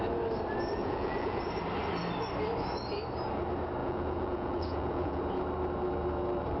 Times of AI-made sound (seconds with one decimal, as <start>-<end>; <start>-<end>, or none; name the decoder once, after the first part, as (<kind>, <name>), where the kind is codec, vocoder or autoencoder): 0.8-1.4 (vocoder, Vocos); 3.8-5.2